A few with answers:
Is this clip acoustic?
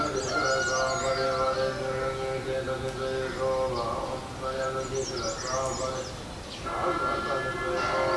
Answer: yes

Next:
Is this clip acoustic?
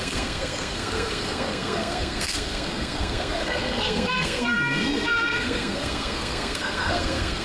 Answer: no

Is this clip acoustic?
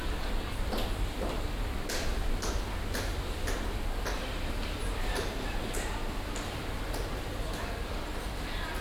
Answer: yes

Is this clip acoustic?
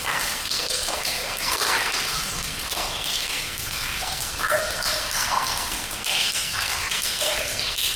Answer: no